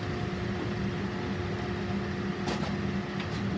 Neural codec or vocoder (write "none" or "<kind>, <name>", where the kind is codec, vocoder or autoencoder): none